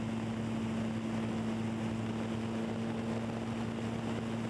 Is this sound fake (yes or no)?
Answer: no